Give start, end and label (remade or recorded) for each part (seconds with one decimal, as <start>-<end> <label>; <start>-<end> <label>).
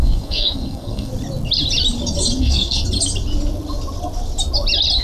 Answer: 0.0-1.1 remade; 1.1-2.4 recorded; 2.4-2.8 remade; 2.8-5.0 recorded